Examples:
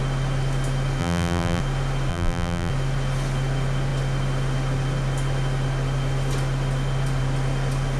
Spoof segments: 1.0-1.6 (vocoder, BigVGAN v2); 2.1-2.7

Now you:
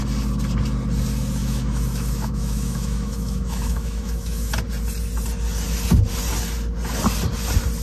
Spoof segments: 1.4-4.5 (autoencoder, DAC-VAE)

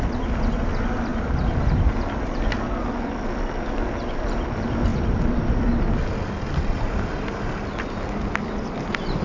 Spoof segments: 1.1-1.6 (vocoder, BigVGAN v2); 4.9-5.9